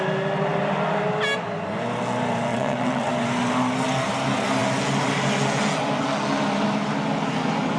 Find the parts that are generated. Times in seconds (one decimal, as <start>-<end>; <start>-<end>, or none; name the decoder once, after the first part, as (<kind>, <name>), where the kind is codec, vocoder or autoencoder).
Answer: 2.5-3.1 (vocoder, WaveNeXt)